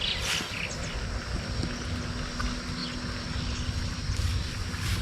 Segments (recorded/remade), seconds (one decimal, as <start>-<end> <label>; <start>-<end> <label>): 0.0-5.0 recorded